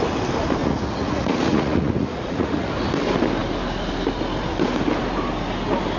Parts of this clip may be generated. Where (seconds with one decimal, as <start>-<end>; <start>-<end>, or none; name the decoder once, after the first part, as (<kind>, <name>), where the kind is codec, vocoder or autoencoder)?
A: 0.6-2.7 (vocoder, Vocos)